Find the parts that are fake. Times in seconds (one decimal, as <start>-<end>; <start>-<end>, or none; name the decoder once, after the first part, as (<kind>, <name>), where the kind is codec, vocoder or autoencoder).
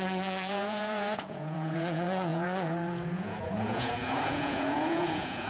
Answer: 0.0-5.5 (vocoder, Vocos)